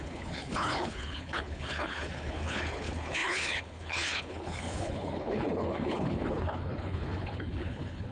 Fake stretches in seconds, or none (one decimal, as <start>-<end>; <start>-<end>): 0.0-8.1